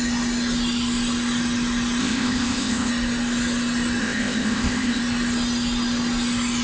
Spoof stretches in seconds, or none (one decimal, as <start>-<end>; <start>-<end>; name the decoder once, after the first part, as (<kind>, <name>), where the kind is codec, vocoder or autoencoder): 2.0-2.9 (codec, ZipCodec); 4.0-5.0

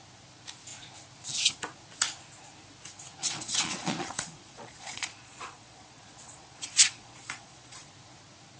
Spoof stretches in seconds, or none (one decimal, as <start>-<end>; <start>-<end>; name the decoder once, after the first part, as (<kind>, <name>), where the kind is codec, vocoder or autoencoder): 3.2-7.9 (vocoder, Vocos)

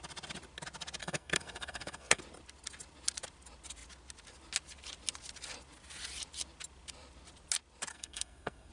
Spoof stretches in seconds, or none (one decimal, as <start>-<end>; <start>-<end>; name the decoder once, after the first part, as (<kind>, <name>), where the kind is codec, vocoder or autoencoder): 1.0-2.2 (codec, SNAC); 7.9-8.7